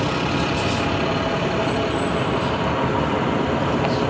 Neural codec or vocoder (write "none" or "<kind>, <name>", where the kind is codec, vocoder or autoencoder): none